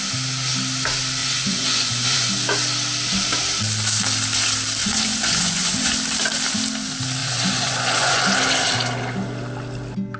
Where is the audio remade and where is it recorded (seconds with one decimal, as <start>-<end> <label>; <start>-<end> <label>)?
0.0-1.2 recorded; 1.2-2.3 remade; 2.3-4.8 recorded; 4.8-5.9 remade; 5.9-7.2 recorded; 7.2-8.2 remade; 8.2-10.2 recorded